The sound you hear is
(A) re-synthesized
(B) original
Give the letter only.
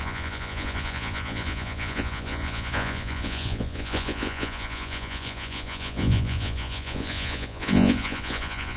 A